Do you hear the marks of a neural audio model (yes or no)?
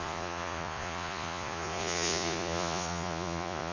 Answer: yes